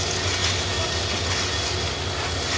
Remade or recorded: recorded